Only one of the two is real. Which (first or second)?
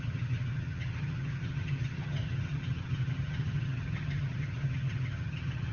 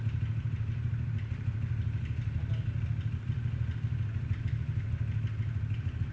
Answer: second